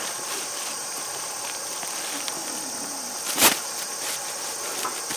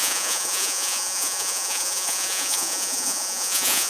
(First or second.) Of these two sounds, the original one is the first